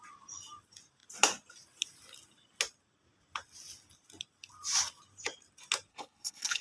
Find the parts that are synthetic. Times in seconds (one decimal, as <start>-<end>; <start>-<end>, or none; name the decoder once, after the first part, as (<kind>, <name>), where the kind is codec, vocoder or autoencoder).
5.9-6.6 (codec, HILCodec)